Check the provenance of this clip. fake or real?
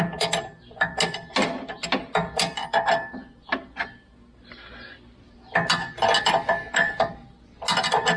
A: real